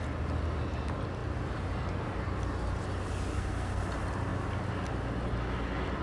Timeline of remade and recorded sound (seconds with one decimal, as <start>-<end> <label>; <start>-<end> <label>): 0.0-3.3 recorded; 3.3-3.8 remade; 3.8-6.0 recorded